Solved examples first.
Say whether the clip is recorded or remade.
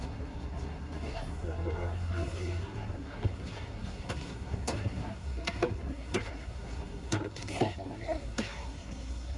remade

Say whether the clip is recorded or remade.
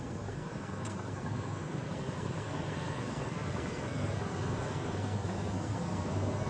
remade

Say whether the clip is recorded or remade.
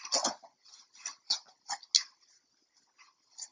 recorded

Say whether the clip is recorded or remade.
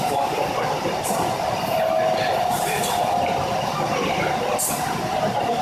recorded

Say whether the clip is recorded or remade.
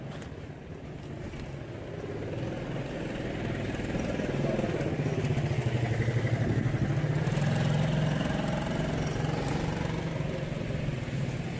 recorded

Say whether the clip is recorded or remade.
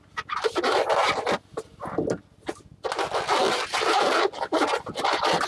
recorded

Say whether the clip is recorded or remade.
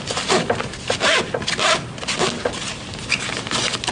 recorded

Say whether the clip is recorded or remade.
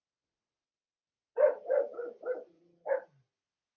recorded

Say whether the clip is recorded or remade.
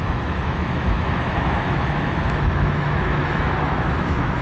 remade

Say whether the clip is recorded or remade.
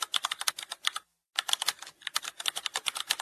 recorded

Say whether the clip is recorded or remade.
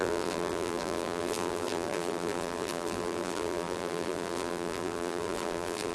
remade